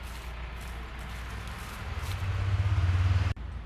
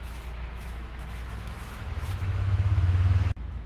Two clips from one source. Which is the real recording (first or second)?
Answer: first